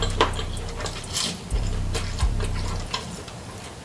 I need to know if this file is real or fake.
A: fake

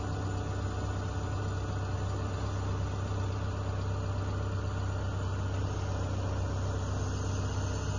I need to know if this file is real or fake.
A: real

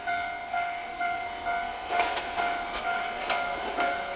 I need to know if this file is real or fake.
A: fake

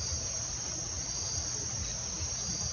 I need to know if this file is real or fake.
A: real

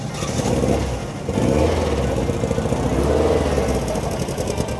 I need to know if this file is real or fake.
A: real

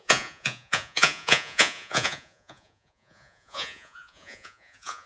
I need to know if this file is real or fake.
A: fake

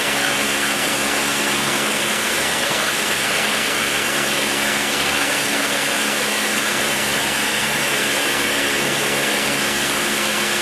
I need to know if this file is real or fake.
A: fake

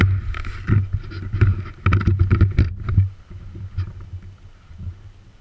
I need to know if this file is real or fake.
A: real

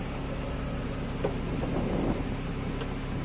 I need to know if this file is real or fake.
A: real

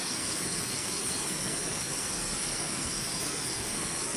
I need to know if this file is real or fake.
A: fake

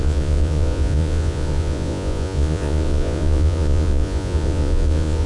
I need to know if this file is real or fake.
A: fake